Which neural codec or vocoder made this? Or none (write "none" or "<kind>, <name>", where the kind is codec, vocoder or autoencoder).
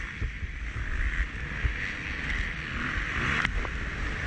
none